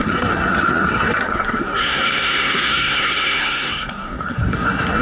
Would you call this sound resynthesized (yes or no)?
yes